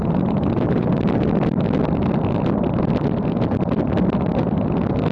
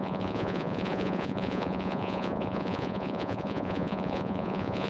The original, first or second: first